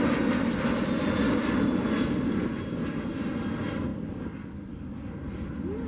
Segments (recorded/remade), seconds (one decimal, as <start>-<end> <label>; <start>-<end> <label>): 0.0-5.9 recorded